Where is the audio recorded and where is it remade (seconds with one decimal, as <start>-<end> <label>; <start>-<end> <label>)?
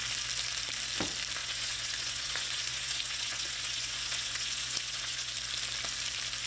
0.0-1.4 recorded; 1.4-5.3 remade; 5.3-6.5 recorded